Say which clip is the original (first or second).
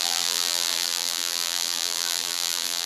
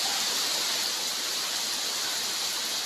second